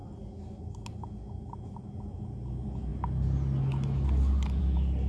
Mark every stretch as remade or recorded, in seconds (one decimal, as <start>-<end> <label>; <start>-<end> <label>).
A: 0.0-5.1 recorded